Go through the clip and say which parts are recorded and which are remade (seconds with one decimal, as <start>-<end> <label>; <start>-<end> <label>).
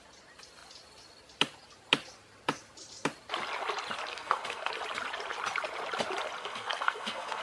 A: 0.0-4.1 recorded; 4.1-4.7 remade; 4.7-6.4 recorded; 6.4-7.4 remade